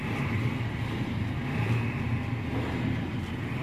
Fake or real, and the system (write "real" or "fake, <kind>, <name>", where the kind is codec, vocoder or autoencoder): real